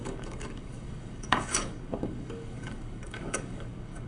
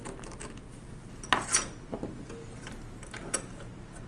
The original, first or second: second